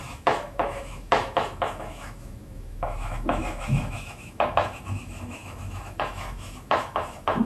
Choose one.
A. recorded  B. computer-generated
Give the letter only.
B